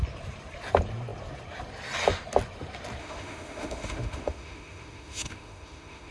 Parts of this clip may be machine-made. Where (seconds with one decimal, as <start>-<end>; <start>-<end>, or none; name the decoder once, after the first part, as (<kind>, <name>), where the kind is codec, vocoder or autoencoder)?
3.0-6.1 (autoencoder, DAC-VAE)